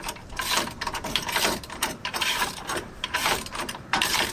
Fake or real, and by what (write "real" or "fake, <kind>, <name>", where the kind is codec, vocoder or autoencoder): fake, vocoder, BigVGAN v2